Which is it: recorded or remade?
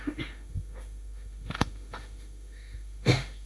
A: remade